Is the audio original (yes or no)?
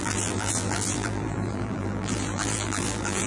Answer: no